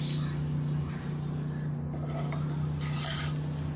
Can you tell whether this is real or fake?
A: real